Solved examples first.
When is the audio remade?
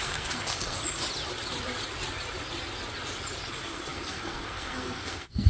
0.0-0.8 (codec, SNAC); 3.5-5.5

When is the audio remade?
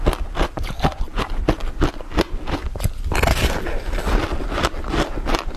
none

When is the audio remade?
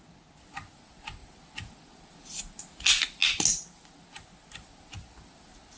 none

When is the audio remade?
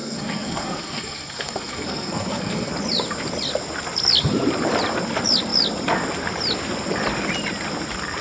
0.0-2.7 (codec, SNAC)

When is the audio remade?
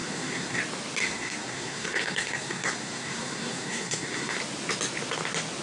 0.0-0.6 (codec, SNAC); 1.0-4.4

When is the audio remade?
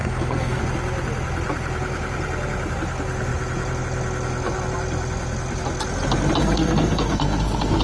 0.0-0.6 (codec, SNAC); 6.4-7.8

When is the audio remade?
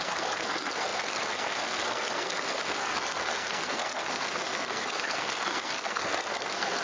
0.0-6.8 (codec, SNAC)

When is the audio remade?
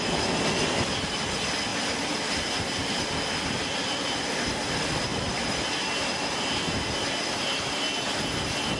none